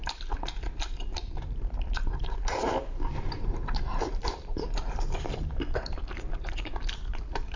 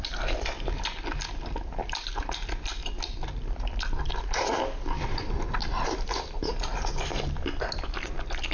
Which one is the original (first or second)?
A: second